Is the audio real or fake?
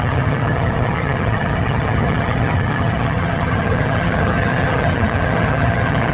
fake